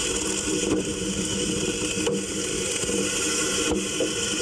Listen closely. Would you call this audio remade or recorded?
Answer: recorded